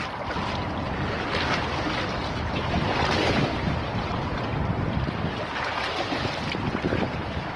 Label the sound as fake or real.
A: real